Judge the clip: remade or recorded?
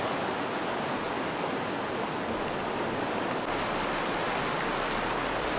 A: recorded